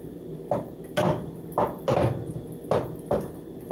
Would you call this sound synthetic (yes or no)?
no